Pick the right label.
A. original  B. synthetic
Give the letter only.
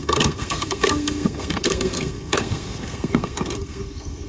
B